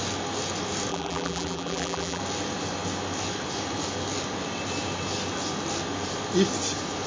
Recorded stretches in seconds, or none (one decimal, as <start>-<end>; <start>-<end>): 0.0-0.9; 2.2-7.1